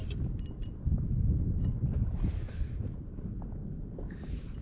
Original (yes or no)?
yes